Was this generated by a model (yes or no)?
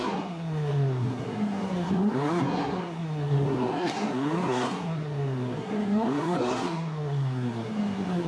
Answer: yes